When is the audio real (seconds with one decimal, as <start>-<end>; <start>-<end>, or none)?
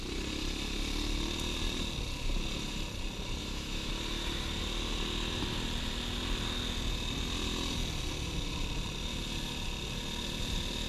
0.0-3.4; 3.9-10.9